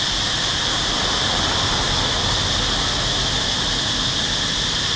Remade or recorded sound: recorded